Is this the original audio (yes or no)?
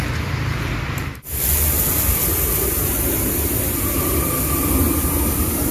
yes